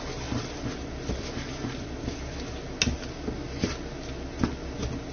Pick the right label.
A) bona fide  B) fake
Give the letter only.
A